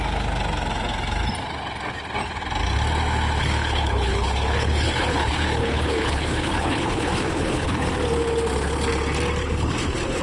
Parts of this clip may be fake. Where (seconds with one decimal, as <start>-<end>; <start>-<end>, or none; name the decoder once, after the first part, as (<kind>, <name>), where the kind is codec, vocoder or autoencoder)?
3.4-7.9 (codec, HILCodec); 9.4-10.2